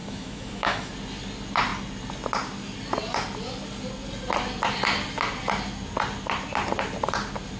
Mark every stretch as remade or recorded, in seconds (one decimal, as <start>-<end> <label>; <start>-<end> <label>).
0.0-0.9 remade; 0.9-7.6 recorded